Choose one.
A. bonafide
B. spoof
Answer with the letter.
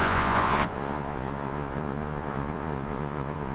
B